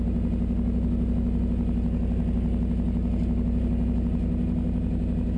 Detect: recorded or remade recorded